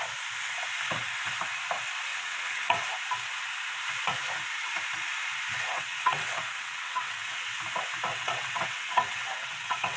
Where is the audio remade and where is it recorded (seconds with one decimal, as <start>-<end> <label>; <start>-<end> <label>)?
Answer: 0.0-2.1 recorded; 2.1-2.8 remade; 2.8-5.5 recorded; 5.5-7.5 remade; 7.5-8.1 recorded; 8.1-10.0 remade